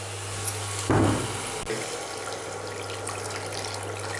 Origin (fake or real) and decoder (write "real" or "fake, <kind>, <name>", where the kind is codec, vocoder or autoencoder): real